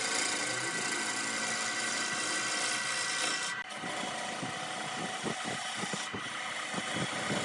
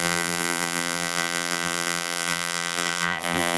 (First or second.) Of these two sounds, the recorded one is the first